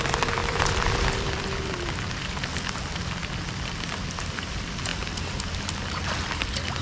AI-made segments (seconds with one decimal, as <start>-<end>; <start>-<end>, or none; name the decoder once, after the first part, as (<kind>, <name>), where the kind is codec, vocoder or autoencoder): 0.0-4.9 (vocoder, BigVGAN v2); 5.9-6.8